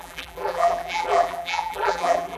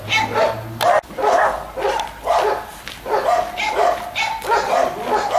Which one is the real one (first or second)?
second